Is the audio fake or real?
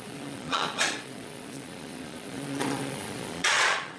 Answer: fake